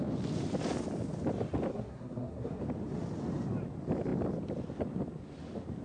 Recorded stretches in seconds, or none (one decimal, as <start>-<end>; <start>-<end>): 0.0-1.7; 2.6-5.8